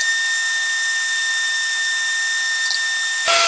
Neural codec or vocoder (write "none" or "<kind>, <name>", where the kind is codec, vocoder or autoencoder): none